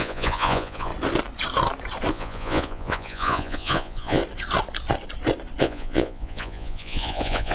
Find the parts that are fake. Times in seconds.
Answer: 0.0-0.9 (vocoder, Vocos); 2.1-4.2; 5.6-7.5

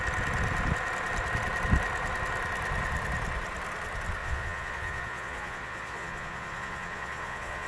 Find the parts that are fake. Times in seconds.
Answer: 4.2-7.7 (vocoder, Vocos)

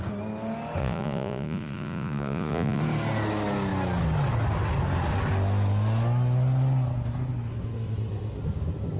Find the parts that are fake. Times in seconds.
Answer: 0.8-2.8 (vocoder, Vocos)